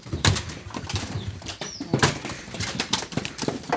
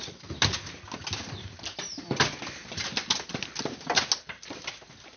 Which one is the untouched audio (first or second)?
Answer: second